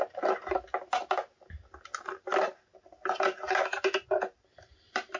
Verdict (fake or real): real